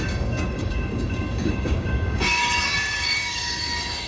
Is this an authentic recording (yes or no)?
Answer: no